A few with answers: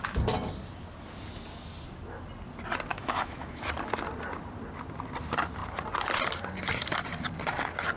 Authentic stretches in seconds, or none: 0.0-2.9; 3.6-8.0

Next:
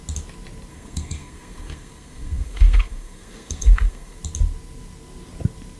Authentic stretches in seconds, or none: 0.0-0.7; 4.2-5.8

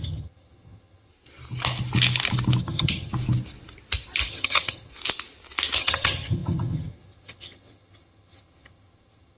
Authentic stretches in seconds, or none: 1.1-2.6; 3.1-4.3; 4.9-5.8